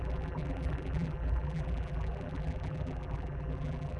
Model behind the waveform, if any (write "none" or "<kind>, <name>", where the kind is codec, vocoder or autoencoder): vocoder, BigVGAN v2